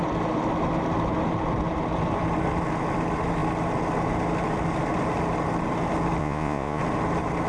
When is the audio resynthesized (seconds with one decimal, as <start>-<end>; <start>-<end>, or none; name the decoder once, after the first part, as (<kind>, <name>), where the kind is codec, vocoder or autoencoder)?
6.2-6.8 (vocoder, Vocos)